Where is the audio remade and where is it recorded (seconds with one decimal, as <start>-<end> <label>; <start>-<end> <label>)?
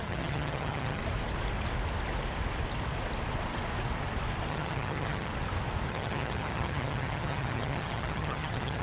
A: 0.0-1.0 remade; 1.0-4.5 recorded; 4.5-5.3 remade; 5.3-5.9 recorded; 5.9-8.8 remade